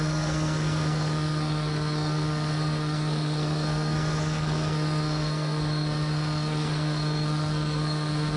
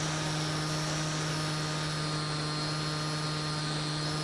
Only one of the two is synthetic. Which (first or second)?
first